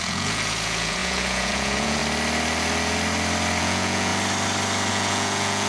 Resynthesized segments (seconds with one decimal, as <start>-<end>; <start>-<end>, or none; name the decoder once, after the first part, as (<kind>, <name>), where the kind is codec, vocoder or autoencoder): 0.0-2.0 (vocoder, Vocos); 3.6-4.1; 4.9-5.7

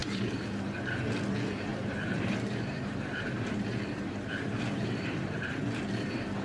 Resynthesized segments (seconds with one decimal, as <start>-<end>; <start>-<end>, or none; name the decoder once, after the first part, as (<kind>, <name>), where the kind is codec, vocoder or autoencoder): 0.0-0.6 (vocoder, BigVGAN v2); 1.7-5.5

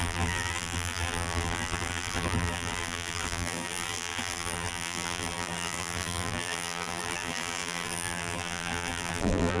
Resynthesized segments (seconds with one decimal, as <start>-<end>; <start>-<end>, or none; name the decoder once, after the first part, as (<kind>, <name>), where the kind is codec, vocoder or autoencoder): 0.0-9.6 (vocoder, BigVGAN v2)

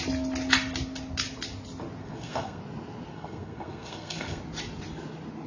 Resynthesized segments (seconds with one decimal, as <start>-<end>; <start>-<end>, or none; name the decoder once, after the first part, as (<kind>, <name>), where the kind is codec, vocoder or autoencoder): 2.0-2.6 (codec, SNAC); 3.1-4.4

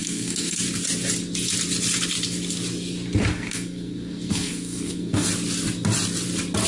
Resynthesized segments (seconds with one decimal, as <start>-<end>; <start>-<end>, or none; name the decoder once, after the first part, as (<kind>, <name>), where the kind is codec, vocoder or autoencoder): 0.0-0.6 (codec, SNAC); 3.3-5.3

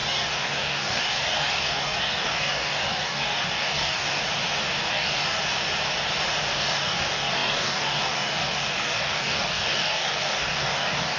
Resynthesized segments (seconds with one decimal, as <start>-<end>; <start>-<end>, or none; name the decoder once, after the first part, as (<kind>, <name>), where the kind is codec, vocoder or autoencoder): 0.0-4.2 (codec, DAC); 4.9-5.4; 6.4-11.2

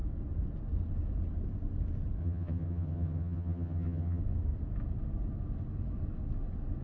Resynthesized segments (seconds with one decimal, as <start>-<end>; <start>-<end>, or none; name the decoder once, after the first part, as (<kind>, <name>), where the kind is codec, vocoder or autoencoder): 2.2-4.2 (vocoder, HiFi-GAN)